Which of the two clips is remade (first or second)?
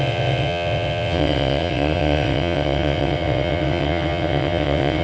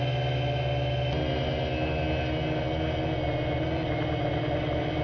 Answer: first